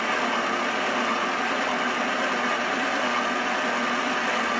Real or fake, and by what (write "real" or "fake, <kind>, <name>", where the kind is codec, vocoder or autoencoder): real